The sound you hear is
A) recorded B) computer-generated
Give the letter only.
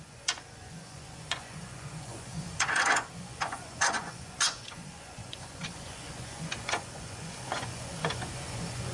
B